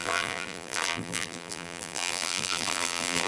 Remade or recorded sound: remade